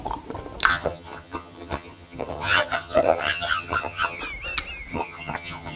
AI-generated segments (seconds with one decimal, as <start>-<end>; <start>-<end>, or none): 0.7-4.2; 4.9-5.8